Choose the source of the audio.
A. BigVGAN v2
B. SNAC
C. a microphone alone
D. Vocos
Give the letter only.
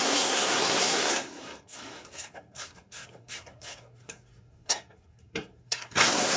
B